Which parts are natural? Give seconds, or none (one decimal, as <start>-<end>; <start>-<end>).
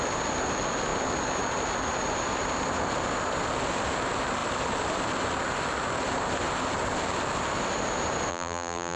0.0-8.3